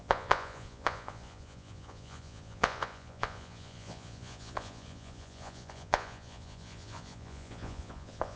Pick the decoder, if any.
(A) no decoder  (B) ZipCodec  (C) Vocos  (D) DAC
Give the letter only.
C